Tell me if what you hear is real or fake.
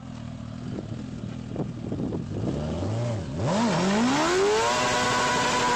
real